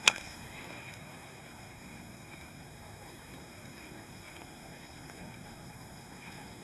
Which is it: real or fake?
fake